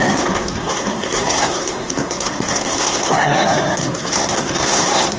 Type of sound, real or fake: fake